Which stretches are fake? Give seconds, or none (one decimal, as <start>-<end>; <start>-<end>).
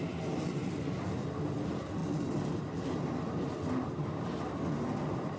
none